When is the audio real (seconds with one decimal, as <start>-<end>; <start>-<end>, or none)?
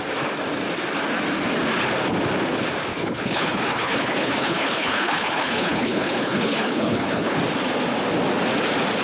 0.0-2.9; 7.4-9.0